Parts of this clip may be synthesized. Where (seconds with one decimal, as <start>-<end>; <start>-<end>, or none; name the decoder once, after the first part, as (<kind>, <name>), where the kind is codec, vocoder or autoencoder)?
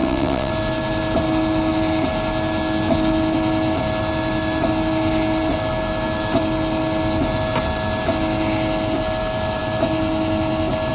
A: 0.0-0.5 (vocoder, WaveNeXt)